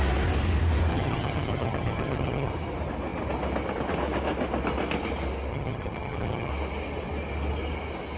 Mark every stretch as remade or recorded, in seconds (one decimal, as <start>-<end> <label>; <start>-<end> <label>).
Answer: 0.0-0.9 recorded; 0.9-2.5 remade; 2.5-5.5 recorded; 5.5-6.5 remade; 6.5-8.2 recorded